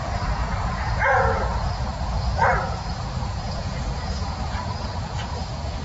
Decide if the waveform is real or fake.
fake